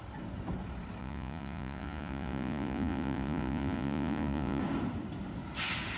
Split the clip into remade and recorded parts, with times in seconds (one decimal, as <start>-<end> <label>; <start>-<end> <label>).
0.0-1.0 recorded; 1.0-4.6 remade; 4.6-6.0 recorded